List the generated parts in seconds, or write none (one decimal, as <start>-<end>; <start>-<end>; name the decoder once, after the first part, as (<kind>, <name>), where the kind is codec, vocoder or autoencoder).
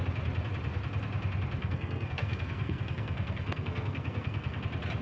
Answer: 1.6-4.6 (codec, SNAC)